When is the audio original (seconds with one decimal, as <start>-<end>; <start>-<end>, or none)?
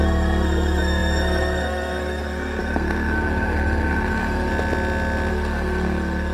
4.5-5.3